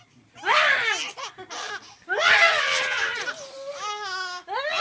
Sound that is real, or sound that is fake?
real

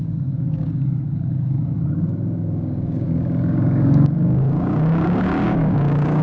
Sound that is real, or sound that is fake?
fake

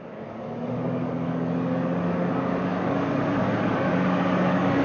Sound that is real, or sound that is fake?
fake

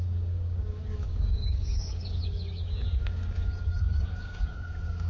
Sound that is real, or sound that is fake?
fake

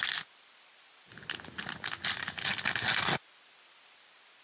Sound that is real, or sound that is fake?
real